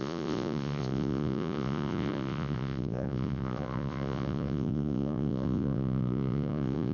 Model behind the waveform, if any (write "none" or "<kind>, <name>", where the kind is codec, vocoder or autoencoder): vocoder, Vocos